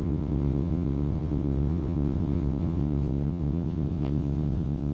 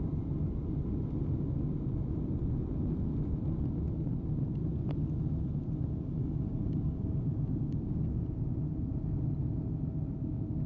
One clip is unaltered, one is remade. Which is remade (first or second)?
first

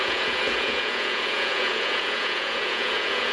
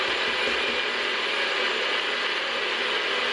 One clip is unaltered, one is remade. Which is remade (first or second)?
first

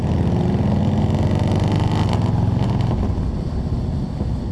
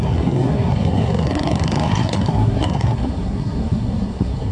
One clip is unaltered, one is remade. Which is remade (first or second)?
second